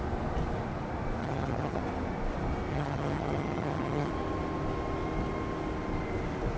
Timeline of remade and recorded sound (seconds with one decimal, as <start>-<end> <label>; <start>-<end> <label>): 0.0-1.2 recorded; 1.2-1.8 remade; 1.8-2.7 recorded; 2.7-4.1 remade; 4.1-6.6 recorded